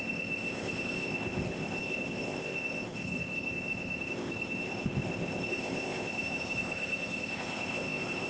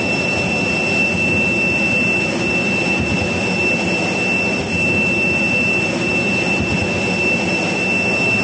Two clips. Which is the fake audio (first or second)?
first